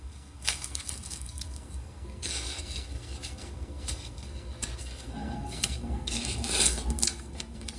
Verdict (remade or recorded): remade